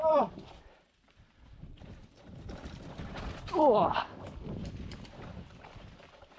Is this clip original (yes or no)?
no